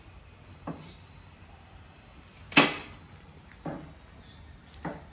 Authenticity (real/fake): real